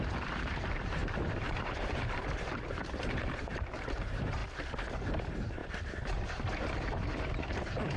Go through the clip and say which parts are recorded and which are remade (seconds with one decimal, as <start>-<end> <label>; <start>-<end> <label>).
0.0-4.4 remade; 4.4-5.1 recorded; 5.1-5.6 remade; 5.6-6.5 recorded; 6.5-8.0 remade